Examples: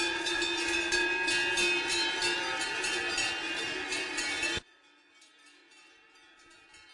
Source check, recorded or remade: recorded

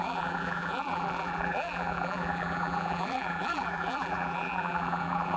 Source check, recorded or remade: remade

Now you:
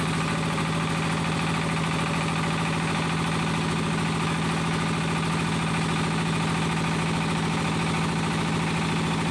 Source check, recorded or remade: recorded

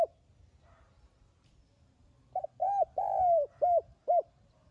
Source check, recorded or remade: recorded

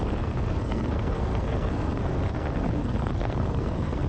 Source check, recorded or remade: remade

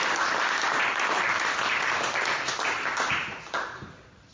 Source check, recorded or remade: recorded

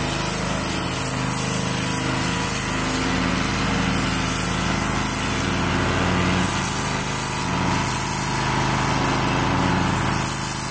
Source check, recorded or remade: recorded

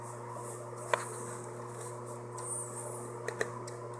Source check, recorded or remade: recorded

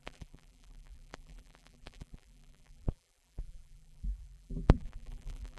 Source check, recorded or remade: remade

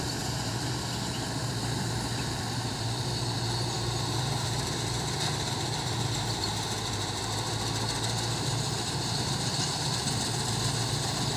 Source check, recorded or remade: remade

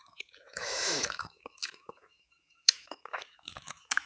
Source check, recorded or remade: remade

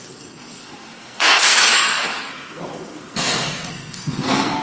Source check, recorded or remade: remade